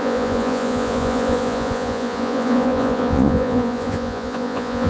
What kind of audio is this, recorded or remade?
remade